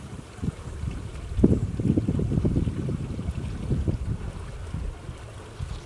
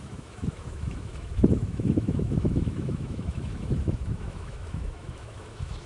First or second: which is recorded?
first